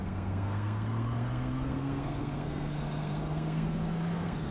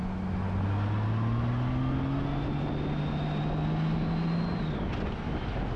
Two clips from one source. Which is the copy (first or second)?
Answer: first